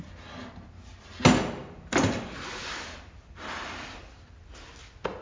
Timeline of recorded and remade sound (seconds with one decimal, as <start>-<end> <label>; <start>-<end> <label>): 0.0-1.6 recorded; 1.6-4.7 remade; 4.7-5.2 recorded